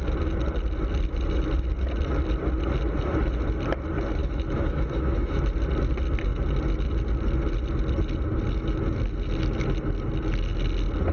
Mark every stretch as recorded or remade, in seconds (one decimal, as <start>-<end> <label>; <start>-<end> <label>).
0.0-4.2 recorded; 4.2-5.4 remade; 5.4-11.1 recorded